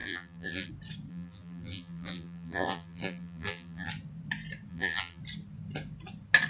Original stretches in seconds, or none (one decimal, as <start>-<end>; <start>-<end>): 0.7-1.1; 3.9-4.7; 5.2-6.5